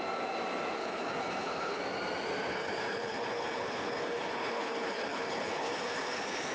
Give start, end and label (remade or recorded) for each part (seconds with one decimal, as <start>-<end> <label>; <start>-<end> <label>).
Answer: 0.0-0.8 recorded; 0.8-1.8 remade; 1.8-2.5 recorded; 2.5-6.5 remade